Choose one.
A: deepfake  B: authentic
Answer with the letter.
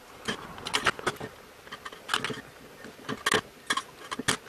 B